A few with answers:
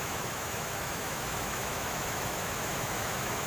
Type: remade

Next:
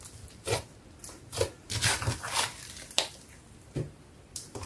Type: remade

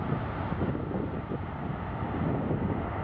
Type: recorded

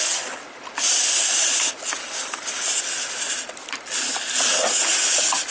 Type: remade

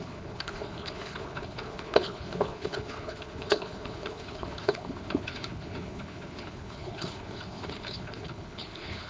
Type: remade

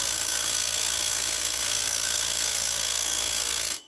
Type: remade